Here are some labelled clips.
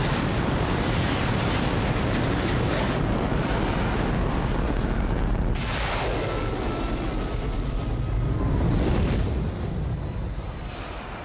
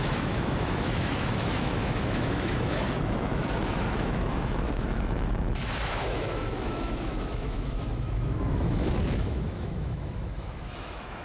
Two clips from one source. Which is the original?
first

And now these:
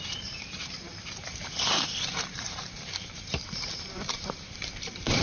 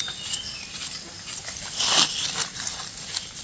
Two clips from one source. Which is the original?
second